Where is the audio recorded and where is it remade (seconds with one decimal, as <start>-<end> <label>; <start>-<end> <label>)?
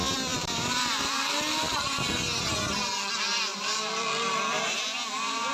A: 0.0-0.5 remade; 0.5-3.1 recorded; 3.1-5.5 remade